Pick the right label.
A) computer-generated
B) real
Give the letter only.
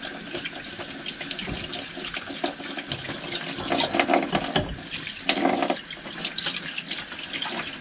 B